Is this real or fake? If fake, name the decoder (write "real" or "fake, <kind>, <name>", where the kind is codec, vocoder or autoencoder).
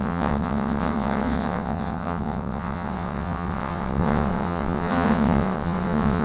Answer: fake, vocoder, WaveNeXt